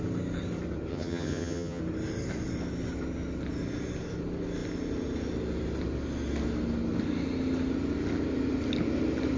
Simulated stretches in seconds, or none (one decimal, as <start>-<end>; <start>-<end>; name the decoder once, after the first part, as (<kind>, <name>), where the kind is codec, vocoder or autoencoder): 0.9-1.8 (vocoder, HiFi-GAN)